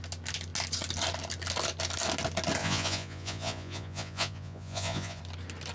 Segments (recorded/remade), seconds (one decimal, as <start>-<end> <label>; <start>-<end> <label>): 0.0-2.6 recorded; 2.6-5.2 remade; 5.2-5.7 recorded